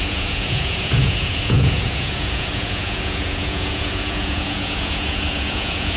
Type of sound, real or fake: fake